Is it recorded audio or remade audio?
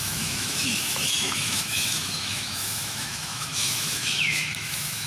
remade